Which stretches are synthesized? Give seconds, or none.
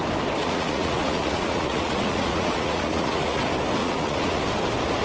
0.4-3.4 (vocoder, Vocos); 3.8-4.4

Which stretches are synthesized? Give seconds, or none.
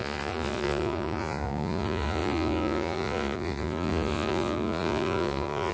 0.0-5.7 (vocoder, Vocos)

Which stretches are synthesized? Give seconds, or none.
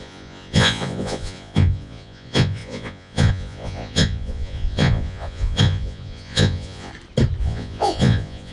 0.0-6.9 (vocoder, Vocos); 7.4-8.5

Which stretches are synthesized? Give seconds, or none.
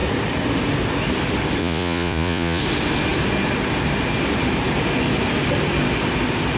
1.6-2.6 (vocoder, Vocos)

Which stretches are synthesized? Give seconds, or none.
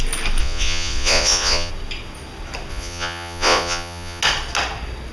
0.4-1.7 (vocoder, Vocos); 2.7-4.2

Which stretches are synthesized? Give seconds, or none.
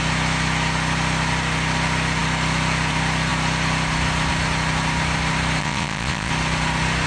5.6-6.3 (vocoder, Vocos)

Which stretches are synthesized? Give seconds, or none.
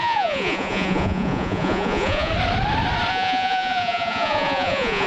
0.0-2.3 (vocoder, Vocos); 3.1-5.1